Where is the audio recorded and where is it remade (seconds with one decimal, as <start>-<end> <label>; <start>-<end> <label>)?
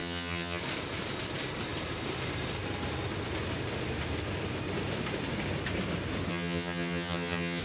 0.0-0.6 remade; 0.6-6.3 recorded; 6.3-7.6 remade